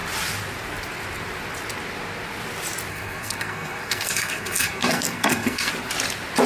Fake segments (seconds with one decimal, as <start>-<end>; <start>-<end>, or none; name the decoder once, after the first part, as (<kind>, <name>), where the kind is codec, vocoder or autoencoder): 2.9-5.7 (codec, SNAC)